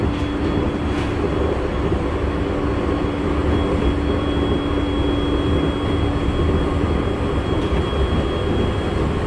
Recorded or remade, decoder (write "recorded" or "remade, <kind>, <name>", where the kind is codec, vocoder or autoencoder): recorded